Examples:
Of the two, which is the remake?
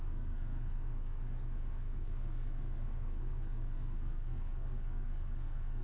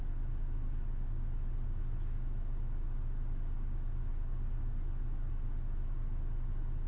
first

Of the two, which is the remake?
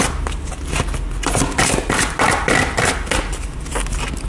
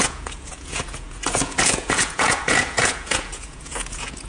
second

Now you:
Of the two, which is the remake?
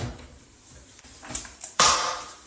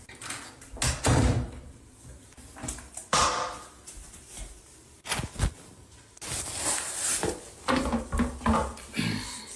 first